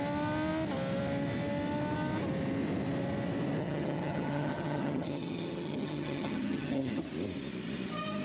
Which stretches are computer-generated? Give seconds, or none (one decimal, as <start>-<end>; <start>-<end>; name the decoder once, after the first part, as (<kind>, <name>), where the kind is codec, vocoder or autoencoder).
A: 3.6-7.0 (vocoder, HiFi-GAN)